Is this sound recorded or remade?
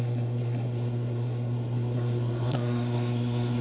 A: remade